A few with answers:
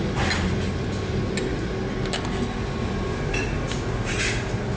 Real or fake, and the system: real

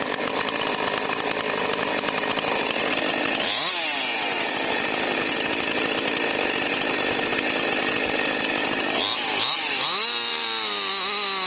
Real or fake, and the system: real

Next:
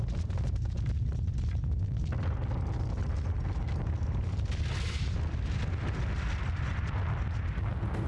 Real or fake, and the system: real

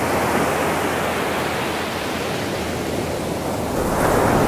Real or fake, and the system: real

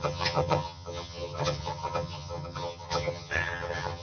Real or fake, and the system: fake, vocoder, HiFi-GAN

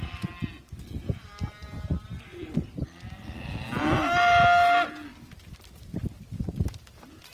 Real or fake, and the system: real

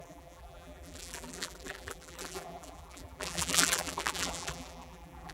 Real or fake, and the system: fake, vocoder, BigVGAN v2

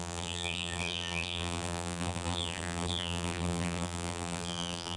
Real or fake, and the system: fake, vocoder, BigVGAN v2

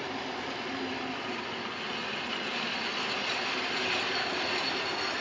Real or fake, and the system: real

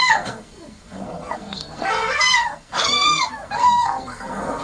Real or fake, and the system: fake, codec, SNAC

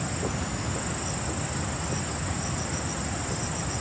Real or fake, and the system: real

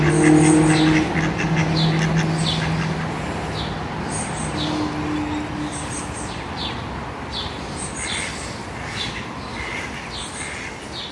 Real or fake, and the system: real